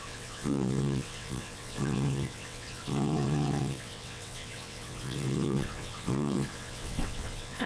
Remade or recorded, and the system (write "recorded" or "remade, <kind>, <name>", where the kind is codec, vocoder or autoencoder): remade, vocoder, WaveNeXt